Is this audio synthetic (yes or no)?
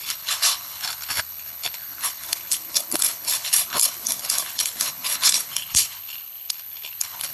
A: yes